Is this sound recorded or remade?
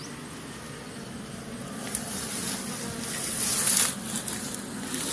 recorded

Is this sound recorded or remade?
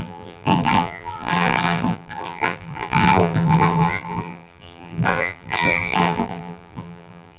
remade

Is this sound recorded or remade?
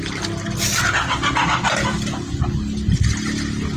recorded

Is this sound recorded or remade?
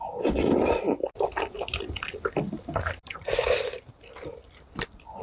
recorded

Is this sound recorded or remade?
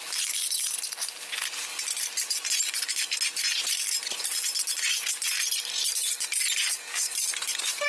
recorded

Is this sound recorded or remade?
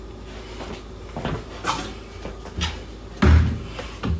recorded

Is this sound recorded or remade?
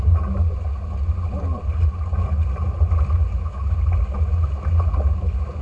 recorded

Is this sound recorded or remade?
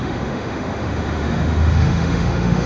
remade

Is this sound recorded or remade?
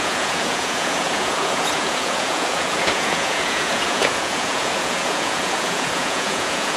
remade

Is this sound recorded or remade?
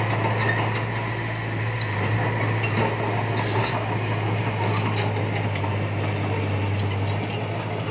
recorded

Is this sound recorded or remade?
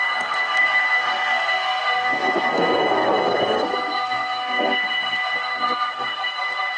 remade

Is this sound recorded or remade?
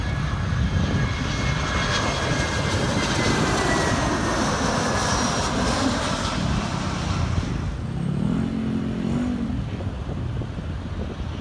recorded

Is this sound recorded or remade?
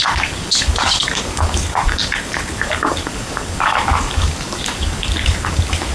remade